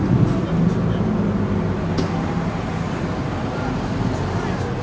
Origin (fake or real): real